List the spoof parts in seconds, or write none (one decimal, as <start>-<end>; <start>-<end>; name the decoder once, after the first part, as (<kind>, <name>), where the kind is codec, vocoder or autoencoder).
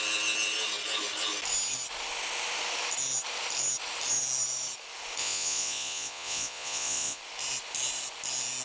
5.2-7.2 (vocoder, Vocos)